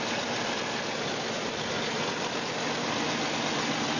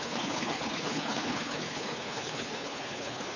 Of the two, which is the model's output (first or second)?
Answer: second